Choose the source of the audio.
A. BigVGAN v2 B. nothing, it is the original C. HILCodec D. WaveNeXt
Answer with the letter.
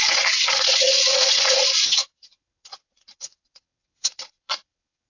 D